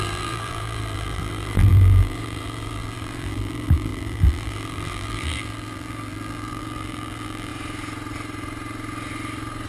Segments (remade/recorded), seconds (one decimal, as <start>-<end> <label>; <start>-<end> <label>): 0.0-7.5 remade; 7.5-9.7 recorded